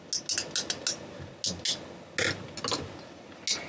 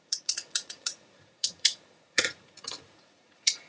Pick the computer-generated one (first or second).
second